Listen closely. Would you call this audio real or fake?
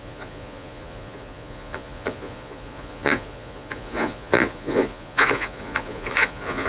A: fake